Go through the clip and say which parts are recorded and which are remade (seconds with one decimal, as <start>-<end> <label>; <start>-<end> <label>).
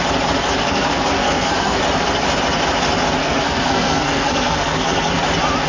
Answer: 0.0-0.6 recorded; 0.6-1.8 remade; 1.8-3.2 recorded; 3.2-5.1 remade; 5.1-5.7 recorded